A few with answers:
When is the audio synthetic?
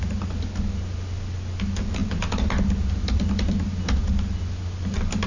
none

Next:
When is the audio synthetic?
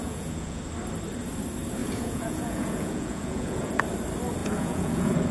0.0-0.6 (vocoder, Vocos); 1.8-3.7; 4.4-5.3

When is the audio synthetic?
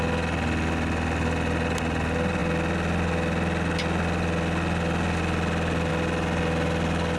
none